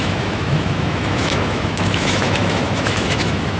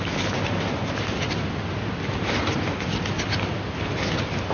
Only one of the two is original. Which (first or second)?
second